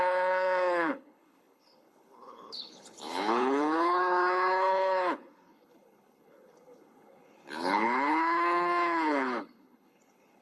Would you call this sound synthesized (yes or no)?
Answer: yes